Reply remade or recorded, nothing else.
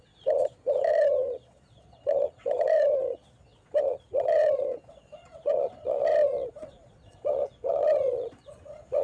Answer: remade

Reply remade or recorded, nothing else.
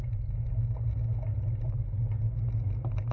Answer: recorded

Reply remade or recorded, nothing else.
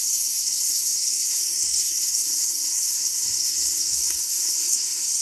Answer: remade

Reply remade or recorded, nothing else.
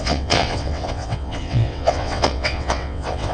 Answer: remade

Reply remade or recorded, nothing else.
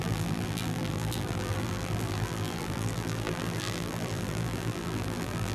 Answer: remade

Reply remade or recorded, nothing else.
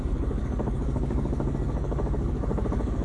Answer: remade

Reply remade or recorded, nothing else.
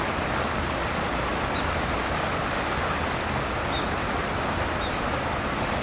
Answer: recorded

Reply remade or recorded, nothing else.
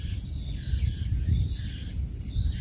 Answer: recorded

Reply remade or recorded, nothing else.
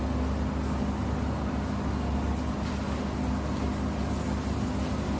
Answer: recorded